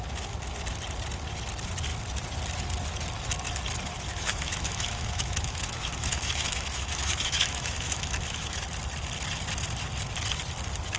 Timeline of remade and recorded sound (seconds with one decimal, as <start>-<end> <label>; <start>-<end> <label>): 0.0-4.1 recorded; 4.1-8.6 remade; 8.6-11.0 recorded